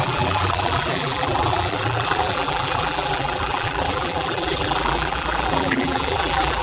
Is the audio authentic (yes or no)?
no